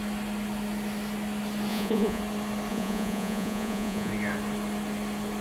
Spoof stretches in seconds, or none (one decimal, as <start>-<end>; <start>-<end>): 1.7-2.2; 2.7-4.1